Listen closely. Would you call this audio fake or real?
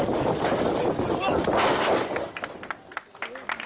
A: real